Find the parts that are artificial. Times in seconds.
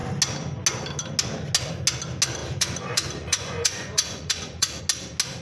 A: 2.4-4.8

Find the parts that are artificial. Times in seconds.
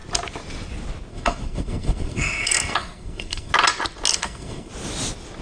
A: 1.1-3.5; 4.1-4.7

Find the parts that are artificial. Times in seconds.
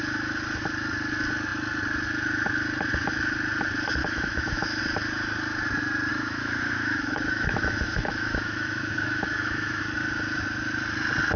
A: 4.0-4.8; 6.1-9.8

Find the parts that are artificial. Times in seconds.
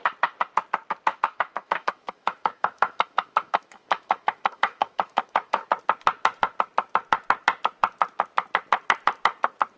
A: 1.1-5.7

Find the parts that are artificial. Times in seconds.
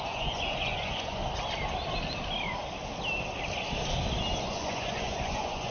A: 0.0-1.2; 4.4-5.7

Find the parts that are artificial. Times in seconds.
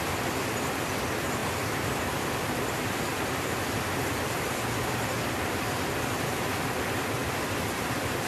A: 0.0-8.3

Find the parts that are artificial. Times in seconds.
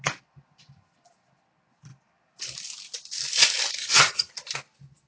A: 3.8-4.3